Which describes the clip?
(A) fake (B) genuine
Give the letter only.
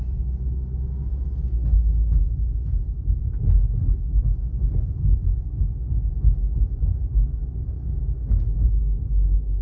B